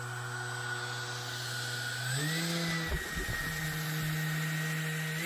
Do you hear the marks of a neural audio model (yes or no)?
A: no